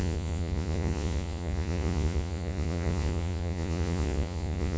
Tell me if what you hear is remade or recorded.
remade